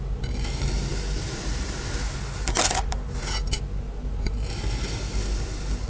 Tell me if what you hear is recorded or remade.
recorded